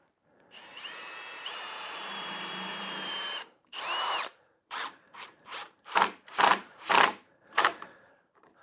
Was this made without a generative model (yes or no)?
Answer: no